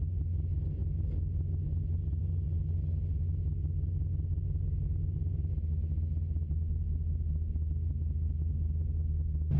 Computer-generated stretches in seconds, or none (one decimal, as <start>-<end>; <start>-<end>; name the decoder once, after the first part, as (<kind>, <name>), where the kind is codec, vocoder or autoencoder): none